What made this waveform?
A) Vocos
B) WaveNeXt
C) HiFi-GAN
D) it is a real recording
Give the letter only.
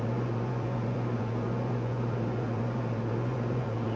A